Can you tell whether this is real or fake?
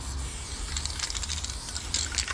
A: real